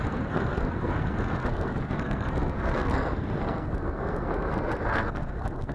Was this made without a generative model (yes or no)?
no